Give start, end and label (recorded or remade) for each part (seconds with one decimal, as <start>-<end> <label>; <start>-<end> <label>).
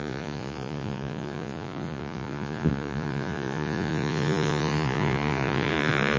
0.0-6.2 remade